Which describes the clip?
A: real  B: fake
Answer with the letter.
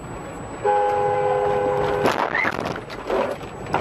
A